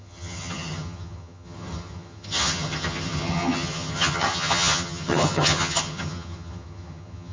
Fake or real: fake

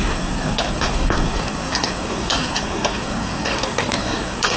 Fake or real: fake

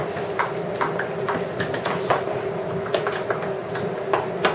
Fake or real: real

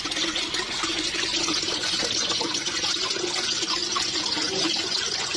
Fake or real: fake